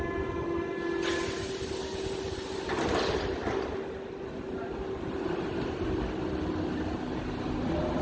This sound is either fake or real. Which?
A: real